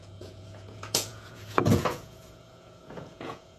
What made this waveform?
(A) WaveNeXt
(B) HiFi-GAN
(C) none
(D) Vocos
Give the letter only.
D